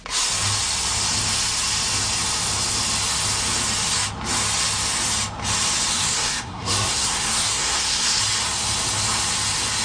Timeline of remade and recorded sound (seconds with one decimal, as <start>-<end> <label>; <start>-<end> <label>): 0.0-5.9 recorded; 5.9-8.2 remade; 8.2-9.8 recorded